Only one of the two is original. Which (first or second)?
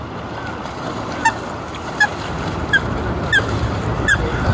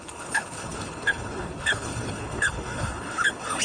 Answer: first